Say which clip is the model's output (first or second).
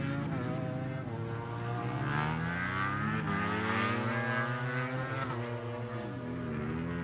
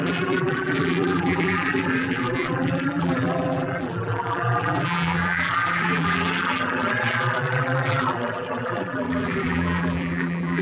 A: second